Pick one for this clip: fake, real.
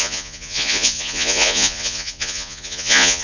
fake